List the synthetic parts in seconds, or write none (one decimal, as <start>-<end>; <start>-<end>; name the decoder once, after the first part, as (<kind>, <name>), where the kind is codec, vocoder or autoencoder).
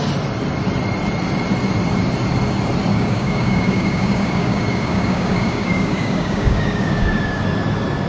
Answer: 2.9-7.4 (codec, DAC)